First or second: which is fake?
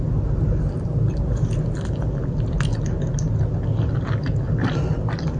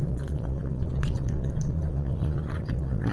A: second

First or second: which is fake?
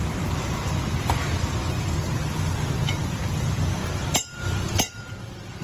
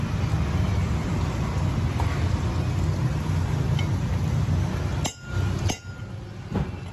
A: first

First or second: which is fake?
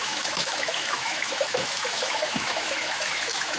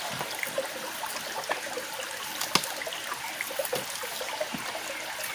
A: first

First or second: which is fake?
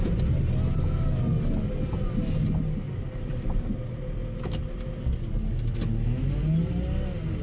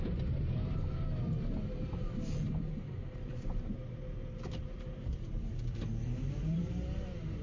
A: second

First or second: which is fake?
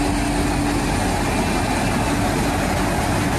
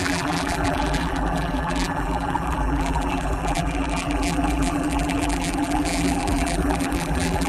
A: second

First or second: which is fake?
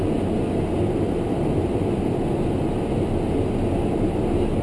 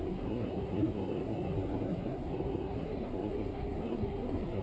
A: second